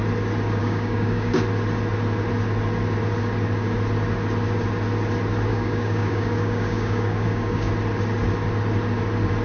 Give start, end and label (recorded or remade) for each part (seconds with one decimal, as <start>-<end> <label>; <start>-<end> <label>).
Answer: 0.0-0.6 recorded; 0.6-1.4 remade; 1.4-5.5 recorded; 5.5-7.7 remade; 7.7-9.4 recorded